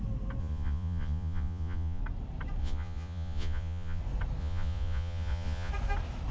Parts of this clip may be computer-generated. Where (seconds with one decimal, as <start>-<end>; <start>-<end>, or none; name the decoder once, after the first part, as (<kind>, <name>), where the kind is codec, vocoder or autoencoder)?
0.4-2.0 (vocoder, Vocos); 2.6-4.0; 4.4-5.7